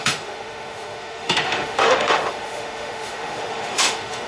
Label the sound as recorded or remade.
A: remade